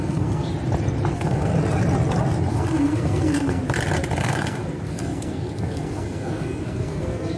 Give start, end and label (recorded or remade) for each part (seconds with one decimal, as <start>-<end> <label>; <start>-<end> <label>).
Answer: 0.0-0.5 remade; 0.5-1.1 recorded; 1.1-1.5 remade; 1.5-2.5 recorded; 2.5-3.6 remade; 3.6-4.2 recorded; 4.2-7.4 remade